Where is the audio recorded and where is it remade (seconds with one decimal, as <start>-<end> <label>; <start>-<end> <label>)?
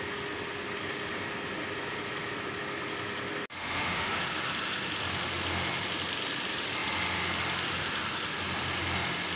0.0-3.6 recorded; 3.6-4.2 remade; 4.2-9.4 recorded